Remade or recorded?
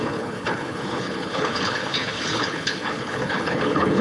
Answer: remade